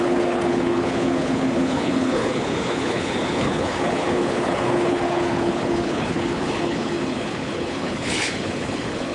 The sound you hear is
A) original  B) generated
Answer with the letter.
B